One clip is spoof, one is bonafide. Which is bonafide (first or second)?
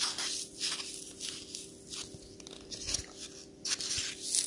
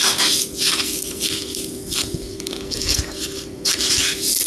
first